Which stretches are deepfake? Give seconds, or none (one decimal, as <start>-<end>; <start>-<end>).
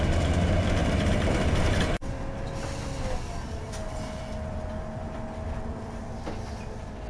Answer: 0.8-2.1; 3.6-6.0